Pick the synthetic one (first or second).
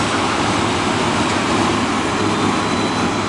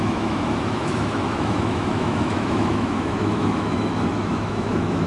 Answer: second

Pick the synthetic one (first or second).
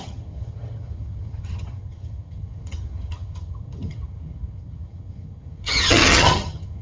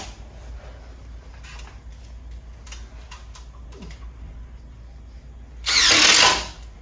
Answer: first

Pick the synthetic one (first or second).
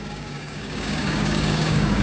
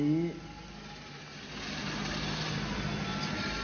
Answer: first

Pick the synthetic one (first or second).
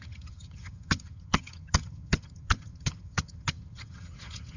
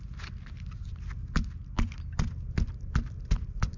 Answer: first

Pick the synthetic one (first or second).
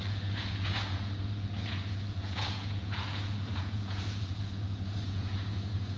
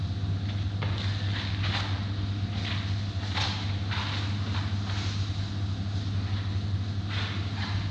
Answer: first